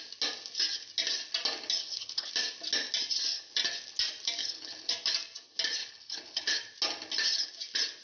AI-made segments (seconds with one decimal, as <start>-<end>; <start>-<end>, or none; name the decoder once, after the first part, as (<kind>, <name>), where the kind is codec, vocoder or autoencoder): 1.8-2.3 (codec, HILCodec); 4.4-4.9; 5.8-6.5

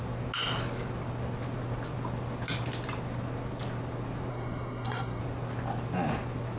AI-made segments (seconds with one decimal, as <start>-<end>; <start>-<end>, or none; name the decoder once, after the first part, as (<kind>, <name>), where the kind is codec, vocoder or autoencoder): 4.3-5.2 (codec, SNAC)

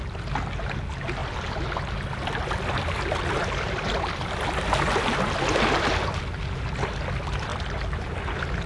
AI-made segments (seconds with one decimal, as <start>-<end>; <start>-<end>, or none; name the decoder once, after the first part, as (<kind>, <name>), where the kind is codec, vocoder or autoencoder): 1.2-5.9 (vocoder, BigVGAN v2)

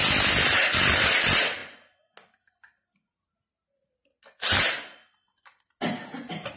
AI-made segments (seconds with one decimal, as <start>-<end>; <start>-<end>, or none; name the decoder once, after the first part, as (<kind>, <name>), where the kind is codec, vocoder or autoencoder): none

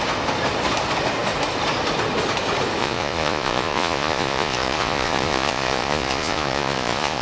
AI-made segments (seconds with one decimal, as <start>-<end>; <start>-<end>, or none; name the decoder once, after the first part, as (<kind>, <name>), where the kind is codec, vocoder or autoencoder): 2.8-7.2 (vocoder, Vocos)

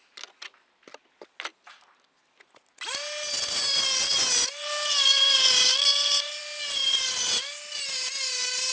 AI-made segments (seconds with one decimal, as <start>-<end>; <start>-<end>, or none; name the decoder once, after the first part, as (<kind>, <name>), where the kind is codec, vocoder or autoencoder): none

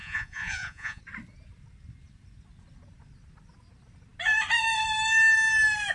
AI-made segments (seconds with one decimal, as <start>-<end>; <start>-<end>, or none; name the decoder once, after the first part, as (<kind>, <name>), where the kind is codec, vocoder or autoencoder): 0.0-1.0 (vocoder, Vocos)